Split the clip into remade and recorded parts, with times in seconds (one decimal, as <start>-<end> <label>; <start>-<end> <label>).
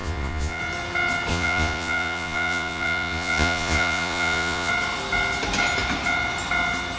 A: 0.0-0.6 remade; 0.6-1.3 recorded; 1.3-4.7 remade; 4.7-7.0 recorded